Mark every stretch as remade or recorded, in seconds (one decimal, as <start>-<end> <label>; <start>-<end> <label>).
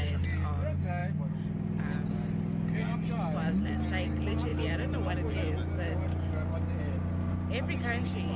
0.0-8.4 recorded